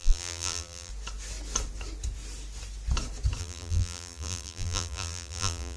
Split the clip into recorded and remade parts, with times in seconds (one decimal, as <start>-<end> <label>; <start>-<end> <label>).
0.0-0.9 remade; 0.9-3.4 recorded; 3.4-5.8 remade